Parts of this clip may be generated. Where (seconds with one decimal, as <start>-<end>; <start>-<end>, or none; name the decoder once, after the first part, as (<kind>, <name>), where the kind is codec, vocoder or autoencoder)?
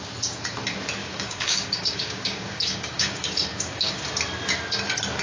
1.0-4.1 (codec, DAC)